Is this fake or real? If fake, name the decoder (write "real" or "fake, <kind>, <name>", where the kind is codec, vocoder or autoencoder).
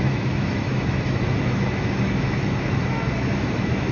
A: fake, autoencoder, DAC-VAE